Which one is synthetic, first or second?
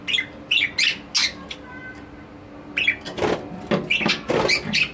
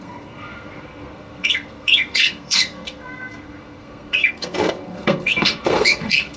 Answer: second